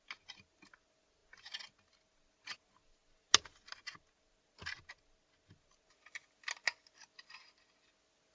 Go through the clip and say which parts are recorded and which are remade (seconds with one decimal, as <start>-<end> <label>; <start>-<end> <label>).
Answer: 0.0-8.3 recorded